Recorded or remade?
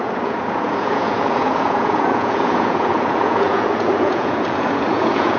remade